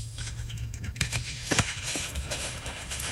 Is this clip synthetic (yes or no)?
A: yes